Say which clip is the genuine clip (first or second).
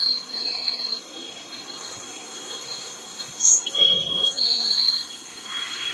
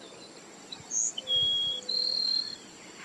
second